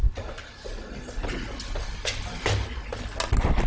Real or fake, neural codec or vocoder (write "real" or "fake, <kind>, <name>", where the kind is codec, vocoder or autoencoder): real